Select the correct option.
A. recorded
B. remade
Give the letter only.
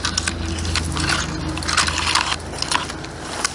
A